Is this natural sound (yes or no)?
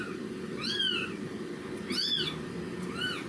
yes